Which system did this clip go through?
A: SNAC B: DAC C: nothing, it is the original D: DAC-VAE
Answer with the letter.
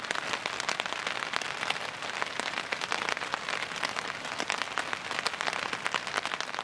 C